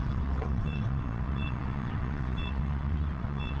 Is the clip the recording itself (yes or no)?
no